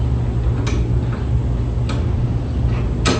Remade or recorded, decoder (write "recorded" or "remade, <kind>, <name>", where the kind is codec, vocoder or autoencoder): recorded